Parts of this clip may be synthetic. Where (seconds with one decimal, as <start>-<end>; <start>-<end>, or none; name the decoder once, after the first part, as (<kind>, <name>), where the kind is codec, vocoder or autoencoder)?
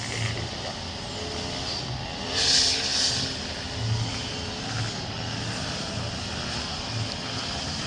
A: none